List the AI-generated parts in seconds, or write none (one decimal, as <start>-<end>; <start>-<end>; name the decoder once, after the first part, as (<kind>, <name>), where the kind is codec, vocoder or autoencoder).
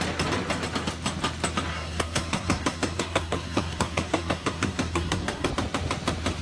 1.7-5.5 (codec, SNAC)